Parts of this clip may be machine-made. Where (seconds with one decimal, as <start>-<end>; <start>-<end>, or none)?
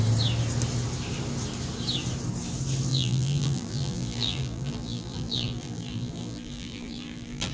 2.9-7.5